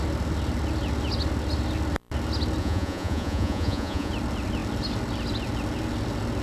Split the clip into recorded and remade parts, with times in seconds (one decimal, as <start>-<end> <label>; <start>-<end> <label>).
0.0-2.6 recorded; 2.6-4.1 remade; 4.1-6.4 recorded

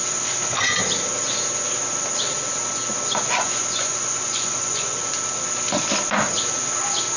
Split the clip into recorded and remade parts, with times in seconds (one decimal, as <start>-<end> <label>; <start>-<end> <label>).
0.0-3.4 recorded; 3.4-5.0 remade; 5.0-7.2 recorded

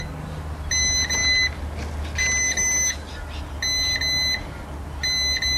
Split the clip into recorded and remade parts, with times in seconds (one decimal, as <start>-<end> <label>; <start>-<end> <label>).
0.0-5.6 recorded

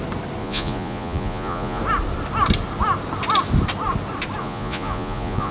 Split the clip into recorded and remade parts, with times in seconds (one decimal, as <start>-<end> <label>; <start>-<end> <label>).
0.0-0.4 recorded; 0.4-1.8 remade; 1.8-4.4 recorded; 4.4-5.5 remade

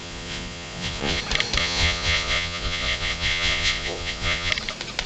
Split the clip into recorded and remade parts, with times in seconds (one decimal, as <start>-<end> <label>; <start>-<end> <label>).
0.0-1.2 remade; 1.2-1.6 recorded; 1.6-4.5 remade; 4.5-5.1 recorded

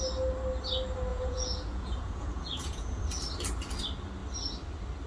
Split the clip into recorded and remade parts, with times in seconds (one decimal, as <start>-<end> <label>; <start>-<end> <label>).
0.0-1.1 recorded; 1.1-3.0 remade; 3.0-5.1 recorded

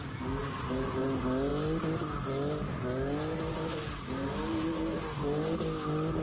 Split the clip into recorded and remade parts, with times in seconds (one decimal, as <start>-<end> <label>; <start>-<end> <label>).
0.0-6.2 recorded